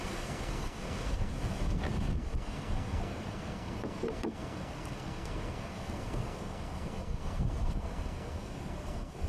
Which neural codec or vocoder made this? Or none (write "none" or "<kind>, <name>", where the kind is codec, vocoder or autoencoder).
codec, SNAC